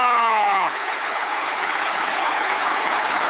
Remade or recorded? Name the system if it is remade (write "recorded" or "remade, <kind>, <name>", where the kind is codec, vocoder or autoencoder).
remade, codec, HILCodec